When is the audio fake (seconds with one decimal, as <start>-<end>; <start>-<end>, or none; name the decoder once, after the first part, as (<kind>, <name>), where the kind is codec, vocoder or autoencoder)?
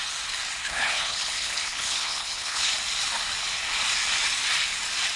0.6-2.7 (codec, HILCodec)